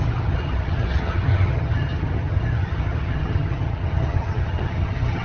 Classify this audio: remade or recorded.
remade